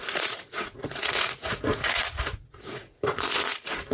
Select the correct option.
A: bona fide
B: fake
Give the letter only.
B